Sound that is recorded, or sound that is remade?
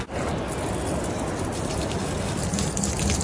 recorded